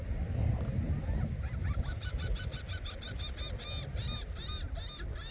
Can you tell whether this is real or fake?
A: real